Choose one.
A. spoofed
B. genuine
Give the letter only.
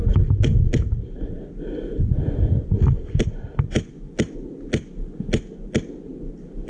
B